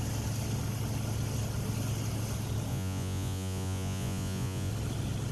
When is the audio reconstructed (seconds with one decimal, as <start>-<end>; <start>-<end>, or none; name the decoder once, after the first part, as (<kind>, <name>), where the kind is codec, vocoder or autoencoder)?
2.7-4.7 (vocoder, Vocos)